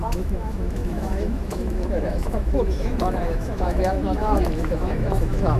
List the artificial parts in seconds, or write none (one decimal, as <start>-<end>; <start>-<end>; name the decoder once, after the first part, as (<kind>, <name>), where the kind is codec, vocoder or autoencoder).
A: 0.0-5.6 (autoencoder, DAC-VAE)